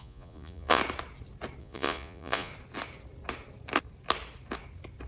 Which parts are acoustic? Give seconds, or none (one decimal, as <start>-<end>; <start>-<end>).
0.8-1.6; 2.5-5.1